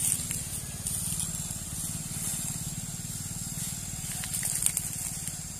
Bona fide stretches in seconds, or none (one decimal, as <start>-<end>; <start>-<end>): 0.0-5.6